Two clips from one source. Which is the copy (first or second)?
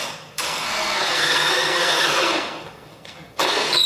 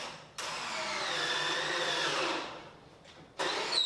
first